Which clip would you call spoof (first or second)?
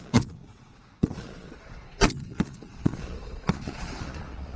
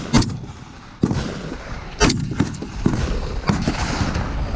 first